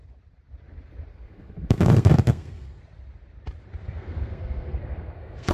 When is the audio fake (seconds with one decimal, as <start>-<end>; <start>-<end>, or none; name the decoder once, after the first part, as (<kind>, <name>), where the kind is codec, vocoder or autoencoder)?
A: 1.1-2.8 (codec, SNAC); 3.8-5.5